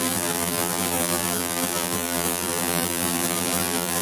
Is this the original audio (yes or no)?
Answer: no